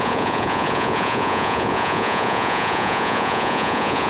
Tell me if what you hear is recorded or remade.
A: remade